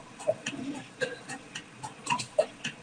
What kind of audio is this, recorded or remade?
remade